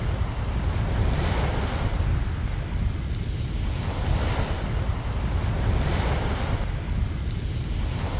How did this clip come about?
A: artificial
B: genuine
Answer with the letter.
B